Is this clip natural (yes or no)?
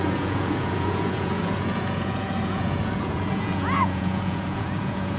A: no